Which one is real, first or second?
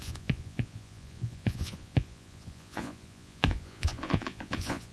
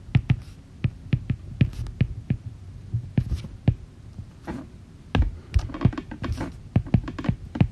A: second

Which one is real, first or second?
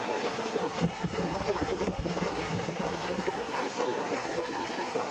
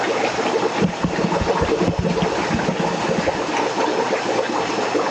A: second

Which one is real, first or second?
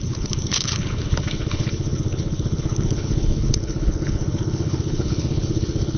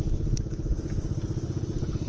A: second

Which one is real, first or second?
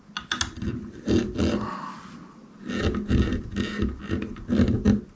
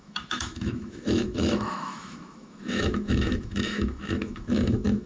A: first